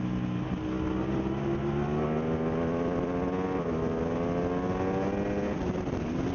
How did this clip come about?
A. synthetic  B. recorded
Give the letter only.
B